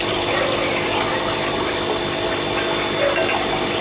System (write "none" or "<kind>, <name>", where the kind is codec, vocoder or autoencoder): none